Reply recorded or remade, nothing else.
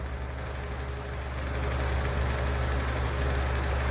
recorded